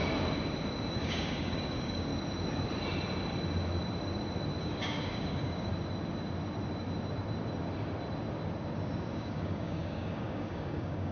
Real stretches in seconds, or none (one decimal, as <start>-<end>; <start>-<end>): 0.0-0.9; 2.1-4.6; 5.7-9.1